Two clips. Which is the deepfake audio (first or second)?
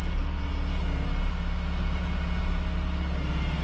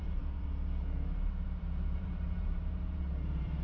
second